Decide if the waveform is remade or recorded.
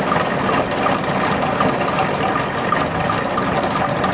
recorded